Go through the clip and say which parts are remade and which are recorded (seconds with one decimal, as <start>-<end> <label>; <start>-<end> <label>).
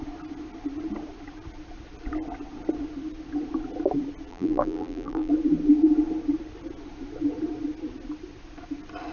0.0-4.3 recorded; 4.3-5.3 remade; 5.3-9.1 recorded